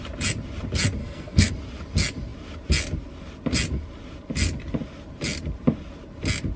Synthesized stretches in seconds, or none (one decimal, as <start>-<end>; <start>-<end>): 1.0-1.5